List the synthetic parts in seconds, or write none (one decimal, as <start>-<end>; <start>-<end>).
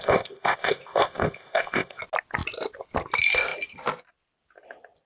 0.0-2.0